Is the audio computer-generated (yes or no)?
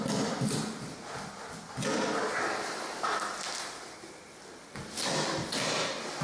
no